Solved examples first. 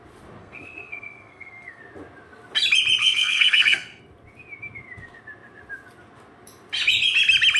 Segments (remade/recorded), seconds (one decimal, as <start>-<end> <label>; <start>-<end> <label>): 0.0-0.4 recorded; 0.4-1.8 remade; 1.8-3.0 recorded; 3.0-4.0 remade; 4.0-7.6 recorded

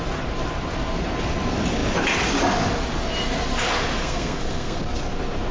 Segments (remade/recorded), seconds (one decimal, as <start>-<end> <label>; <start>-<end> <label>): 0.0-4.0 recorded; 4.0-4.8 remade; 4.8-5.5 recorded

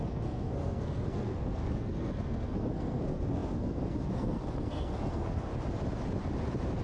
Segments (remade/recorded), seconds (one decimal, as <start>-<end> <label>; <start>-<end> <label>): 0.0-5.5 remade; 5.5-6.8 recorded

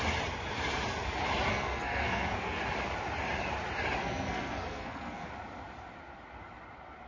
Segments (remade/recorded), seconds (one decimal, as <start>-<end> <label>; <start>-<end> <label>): 0.0-1.5 recorded; 1.5-2.6 remade; 2.6-4.0 recorded; 4.0-5.3 remade; 5.3-7.1 recorded